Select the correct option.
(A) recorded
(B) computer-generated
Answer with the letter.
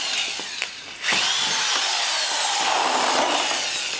A